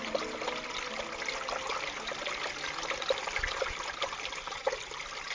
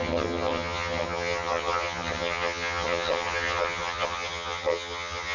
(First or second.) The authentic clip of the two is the first